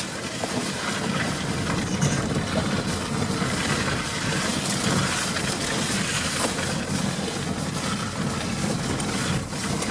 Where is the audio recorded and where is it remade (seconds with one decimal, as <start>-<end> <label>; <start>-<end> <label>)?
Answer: 0.0-9.9 recorded